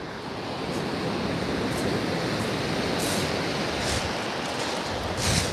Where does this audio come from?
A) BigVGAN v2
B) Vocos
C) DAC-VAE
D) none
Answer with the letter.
D